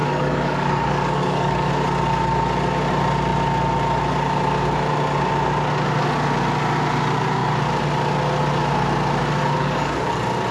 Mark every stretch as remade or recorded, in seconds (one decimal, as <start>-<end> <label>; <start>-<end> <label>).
0.0-1.7 remade; 1.7-9.6 recorded; 9.6-10.1 remade; 10.1-10.5 recorded